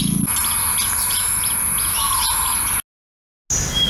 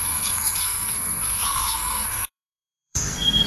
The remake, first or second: second